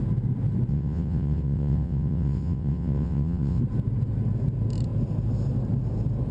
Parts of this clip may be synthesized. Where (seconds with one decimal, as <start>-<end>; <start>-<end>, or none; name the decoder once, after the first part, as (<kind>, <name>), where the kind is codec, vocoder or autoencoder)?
0.7-3.6 (vocoder, WaveNeXt)